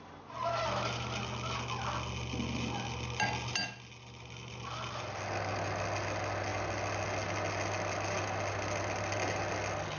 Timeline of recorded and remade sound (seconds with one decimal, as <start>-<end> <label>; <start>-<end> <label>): 0.0-10.0 recorded